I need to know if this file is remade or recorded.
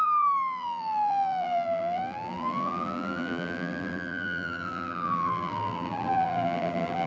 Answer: remade